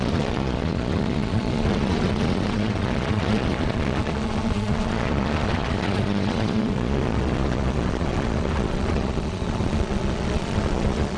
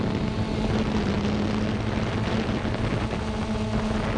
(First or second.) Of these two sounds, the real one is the second